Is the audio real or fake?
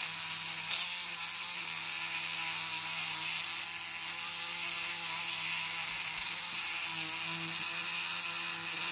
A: real